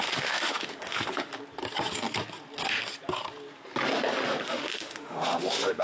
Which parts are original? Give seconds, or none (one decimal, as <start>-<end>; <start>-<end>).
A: 1.3-4.5